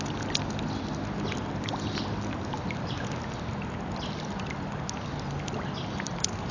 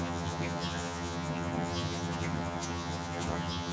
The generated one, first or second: second